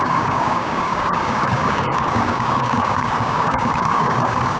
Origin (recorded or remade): remade